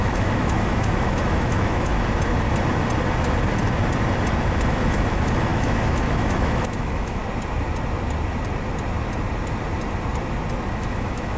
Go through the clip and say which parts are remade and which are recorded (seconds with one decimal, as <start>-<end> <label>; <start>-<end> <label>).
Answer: 0.0-1.9 remade; 1.9-4.7 recorded; 4.7-7.2 remade; 7.2-10.8 recorded; 10.8-11.4 remade